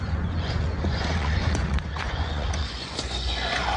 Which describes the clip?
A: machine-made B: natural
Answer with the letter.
A